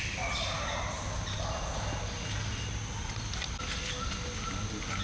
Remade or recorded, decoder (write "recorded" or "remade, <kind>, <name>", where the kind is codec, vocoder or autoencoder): recorded